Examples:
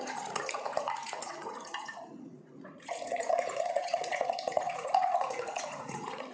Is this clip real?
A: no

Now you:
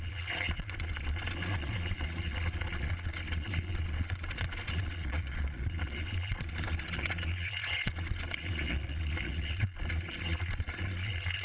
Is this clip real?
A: no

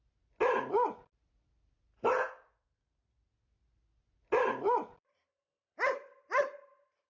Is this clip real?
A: yes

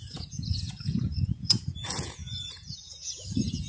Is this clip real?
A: no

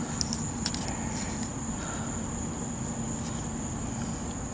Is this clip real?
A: yes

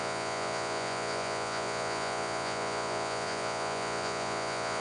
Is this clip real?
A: no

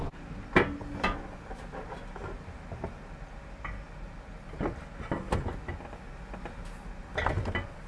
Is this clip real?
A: yes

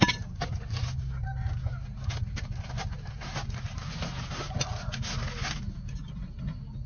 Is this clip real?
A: yes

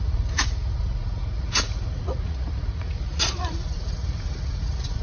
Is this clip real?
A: no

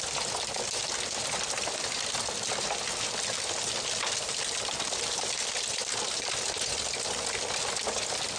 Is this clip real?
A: yes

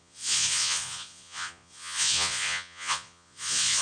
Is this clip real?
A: no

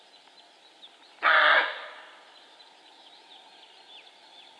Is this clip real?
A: yes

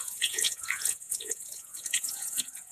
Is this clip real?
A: no